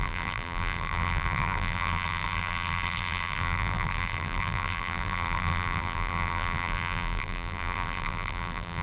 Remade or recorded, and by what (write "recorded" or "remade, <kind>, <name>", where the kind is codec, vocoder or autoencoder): remade, vocoder, BigVGAN v2